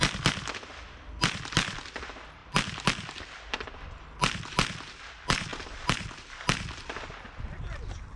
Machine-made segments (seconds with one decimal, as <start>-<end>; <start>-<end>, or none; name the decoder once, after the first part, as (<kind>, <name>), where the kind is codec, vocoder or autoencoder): none